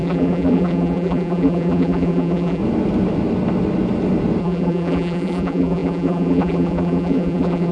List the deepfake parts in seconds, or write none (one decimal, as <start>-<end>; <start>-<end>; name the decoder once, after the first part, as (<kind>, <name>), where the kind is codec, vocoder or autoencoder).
0.0-2.6 (vocoder, BigVGAN v2); 4.4-7.7